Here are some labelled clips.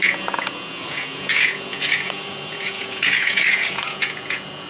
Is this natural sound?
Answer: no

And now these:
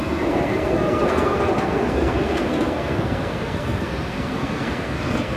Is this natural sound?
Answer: no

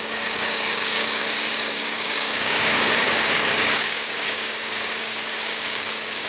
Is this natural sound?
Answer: no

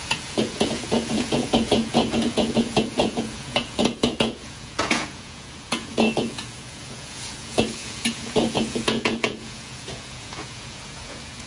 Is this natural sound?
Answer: no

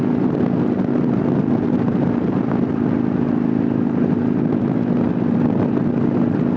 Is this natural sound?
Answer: yes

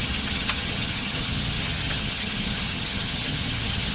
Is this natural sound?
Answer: no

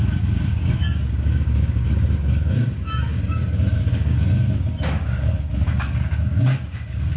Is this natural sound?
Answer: no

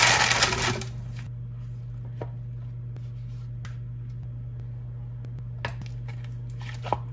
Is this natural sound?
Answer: yes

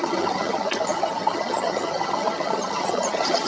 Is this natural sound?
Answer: no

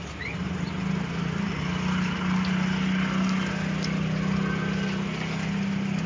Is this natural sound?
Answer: yes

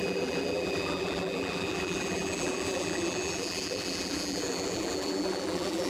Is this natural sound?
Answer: no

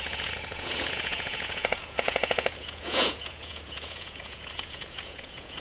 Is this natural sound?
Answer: no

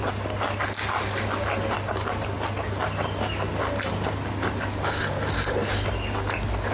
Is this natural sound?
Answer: yes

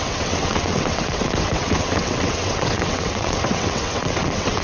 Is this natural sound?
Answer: no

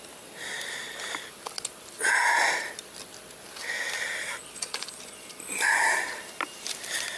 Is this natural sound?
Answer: no